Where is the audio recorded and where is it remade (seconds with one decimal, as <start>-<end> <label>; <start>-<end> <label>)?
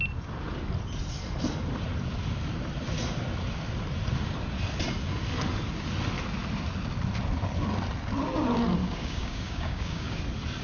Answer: 0.0-8.8 recorded; 8.8-10.2 remade; 10.2-10.6 recorded